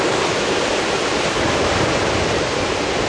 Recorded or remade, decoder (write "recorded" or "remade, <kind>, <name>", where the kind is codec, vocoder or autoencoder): recorded